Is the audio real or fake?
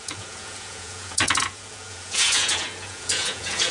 fake